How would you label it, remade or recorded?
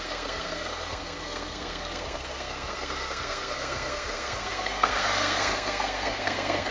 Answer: remade